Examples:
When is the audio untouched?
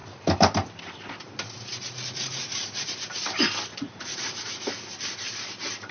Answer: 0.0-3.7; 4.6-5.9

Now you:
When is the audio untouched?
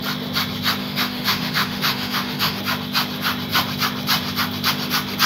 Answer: 0.0-0.8; 2.6-5.3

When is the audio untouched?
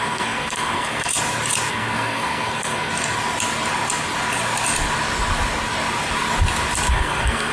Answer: 1.1-1.7; 2.9-6.9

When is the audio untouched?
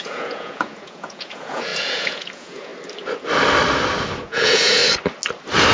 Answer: 2.7-4.2; 4.8-5.7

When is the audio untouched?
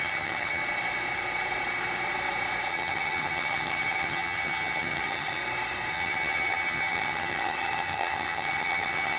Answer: 0.6-2.7; 5.4-5.9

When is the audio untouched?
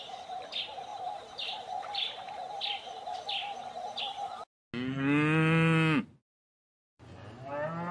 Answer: 0.0-7.9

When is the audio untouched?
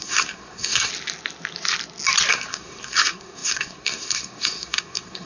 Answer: 0.9-2.3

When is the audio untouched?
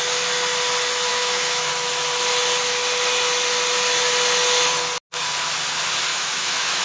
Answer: 0.0-1.1; 1.7-6.1